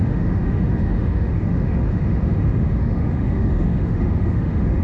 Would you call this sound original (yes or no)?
no